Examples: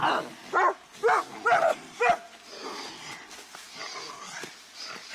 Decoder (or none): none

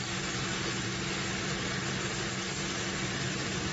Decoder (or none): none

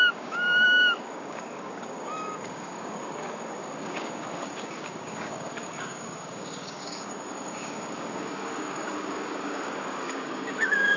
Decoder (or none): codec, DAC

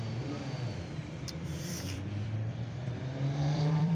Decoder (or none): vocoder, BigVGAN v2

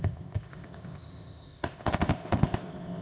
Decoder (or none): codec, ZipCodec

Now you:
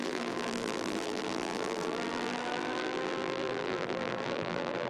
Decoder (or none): vocoder, BigVGAN v2